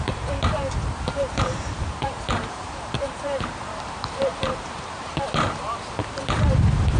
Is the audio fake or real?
fake